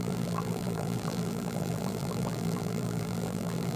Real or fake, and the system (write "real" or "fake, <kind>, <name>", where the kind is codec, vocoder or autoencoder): fake, vocoder, BigVGAN v2